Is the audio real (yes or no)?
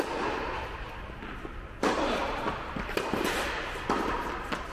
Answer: yes